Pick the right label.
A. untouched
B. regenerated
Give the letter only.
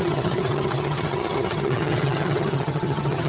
B